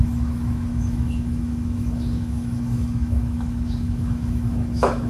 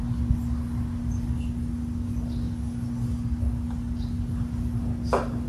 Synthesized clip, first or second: first